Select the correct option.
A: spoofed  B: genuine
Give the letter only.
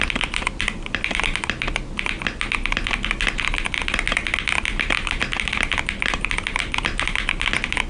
B